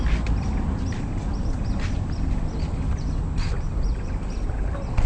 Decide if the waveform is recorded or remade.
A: recorded